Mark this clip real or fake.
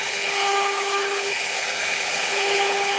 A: fake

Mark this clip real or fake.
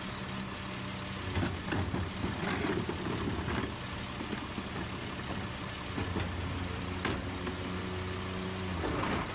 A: real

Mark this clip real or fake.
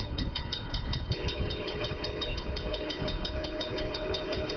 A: fake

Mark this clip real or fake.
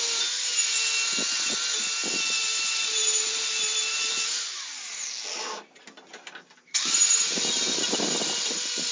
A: real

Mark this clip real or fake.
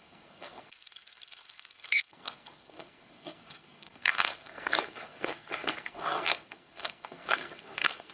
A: fake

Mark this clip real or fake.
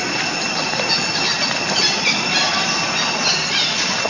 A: real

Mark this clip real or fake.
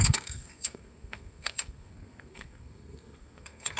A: fake